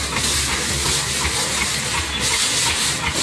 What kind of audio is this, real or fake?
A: real